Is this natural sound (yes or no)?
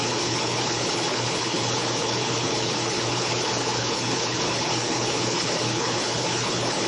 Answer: no